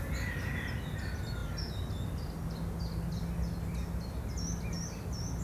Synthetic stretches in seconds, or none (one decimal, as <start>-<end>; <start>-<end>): none

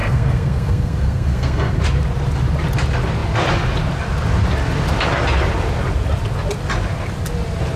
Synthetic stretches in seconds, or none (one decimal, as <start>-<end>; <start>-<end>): 0.0-1.8

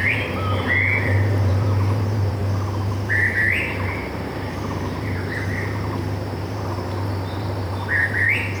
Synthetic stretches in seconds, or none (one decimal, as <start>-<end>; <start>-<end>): 0.0-2.4; 2.9-8.6

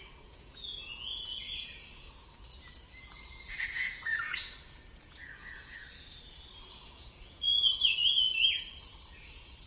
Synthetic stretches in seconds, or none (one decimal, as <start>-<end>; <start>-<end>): 0.0-5.8; 6.7-9.7

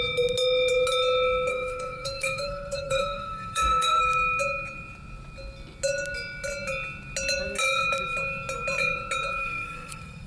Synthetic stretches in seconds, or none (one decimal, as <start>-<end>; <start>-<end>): 1.5-4.0; 9.4-10.3

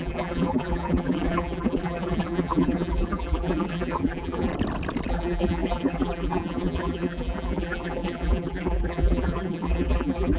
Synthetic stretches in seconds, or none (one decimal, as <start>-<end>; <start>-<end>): 0.0-4.5; 5.1-10.4